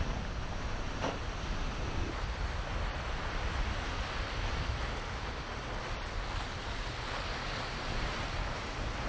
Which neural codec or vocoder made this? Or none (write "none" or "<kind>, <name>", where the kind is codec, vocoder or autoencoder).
none